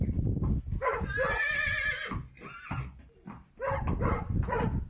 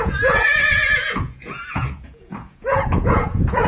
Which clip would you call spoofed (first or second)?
second